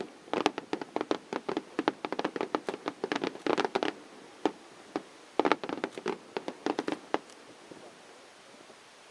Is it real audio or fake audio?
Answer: real